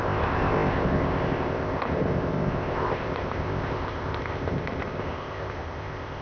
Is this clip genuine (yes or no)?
no